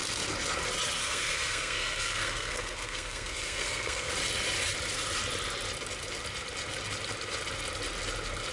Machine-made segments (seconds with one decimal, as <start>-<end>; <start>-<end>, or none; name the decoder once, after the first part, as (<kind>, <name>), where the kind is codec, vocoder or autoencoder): 1.0-4.1 (codec, SNAC)